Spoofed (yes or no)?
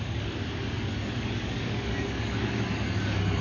yes